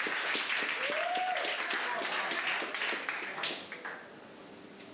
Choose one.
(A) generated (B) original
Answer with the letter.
B